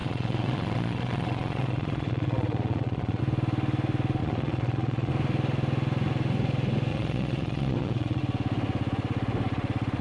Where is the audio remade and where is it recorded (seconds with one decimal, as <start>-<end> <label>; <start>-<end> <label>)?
0.0-3.2 remade; 3.2-4.2 recorded; 4.2-5.1 remade; 5.1-6.9 recorded; 6.9-8.2 remade; 8.2-10.0 recorded